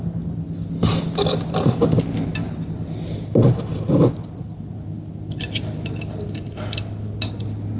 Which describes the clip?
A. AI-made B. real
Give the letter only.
B